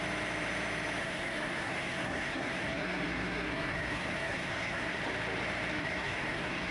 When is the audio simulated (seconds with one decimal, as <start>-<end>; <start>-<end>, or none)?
1.0-5.0; 5.7-6.7